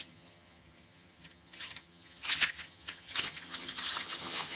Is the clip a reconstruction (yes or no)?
yes